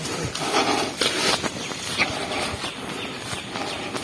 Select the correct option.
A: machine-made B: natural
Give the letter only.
B